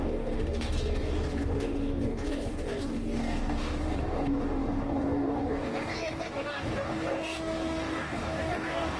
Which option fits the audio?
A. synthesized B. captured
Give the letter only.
A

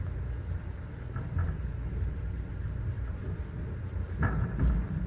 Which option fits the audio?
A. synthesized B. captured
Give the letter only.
B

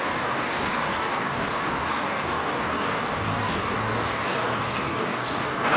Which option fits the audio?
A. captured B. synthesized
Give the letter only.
B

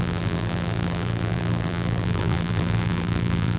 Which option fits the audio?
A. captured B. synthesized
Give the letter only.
B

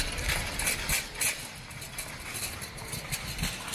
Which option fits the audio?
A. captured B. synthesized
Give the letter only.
A